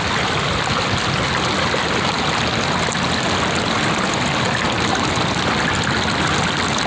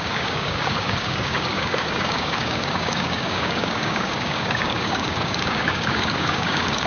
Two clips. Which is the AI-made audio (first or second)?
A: second